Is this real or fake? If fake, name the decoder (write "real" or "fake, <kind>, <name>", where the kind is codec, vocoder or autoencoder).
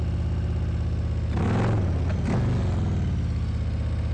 real